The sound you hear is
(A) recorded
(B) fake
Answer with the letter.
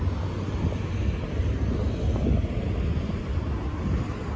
A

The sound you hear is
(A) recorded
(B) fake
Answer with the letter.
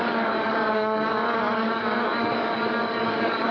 B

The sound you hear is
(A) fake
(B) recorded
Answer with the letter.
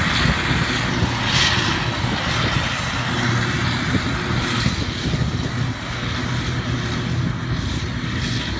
B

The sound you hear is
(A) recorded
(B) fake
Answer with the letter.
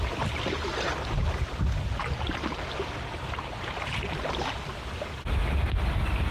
A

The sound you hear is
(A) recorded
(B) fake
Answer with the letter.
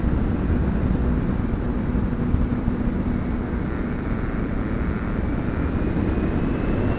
A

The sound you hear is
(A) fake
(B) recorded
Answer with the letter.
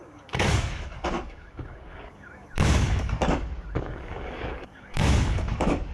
A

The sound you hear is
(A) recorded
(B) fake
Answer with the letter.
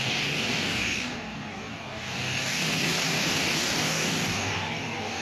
B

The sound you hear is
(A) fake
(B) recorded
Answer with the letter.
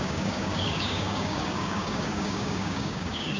A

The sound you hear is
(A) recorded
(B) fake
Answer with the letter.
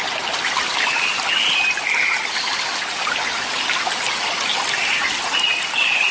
A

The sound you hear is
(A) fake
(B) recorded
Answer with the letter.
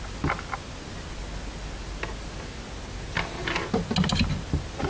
B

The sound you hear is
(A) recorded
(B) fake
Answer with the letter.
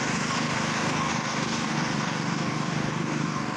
B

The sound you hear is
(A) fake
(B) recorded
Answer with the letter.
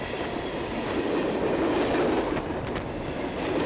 B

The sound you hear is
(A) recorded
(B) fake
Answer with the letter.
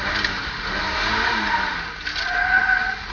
A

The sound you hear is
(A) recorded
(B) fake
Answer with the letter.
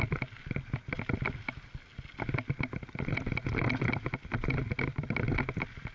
A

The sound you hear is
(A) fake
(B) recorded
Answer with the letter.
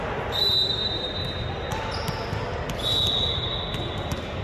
B